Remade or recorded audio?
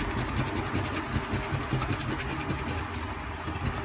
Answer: recorded